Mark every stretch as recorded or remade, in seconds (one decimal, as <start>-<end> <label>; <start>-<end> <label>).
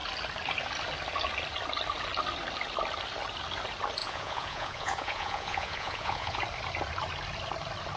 0.0-4.0 recorded; 4.0-6.4 remade; 6.4-8.0 recorded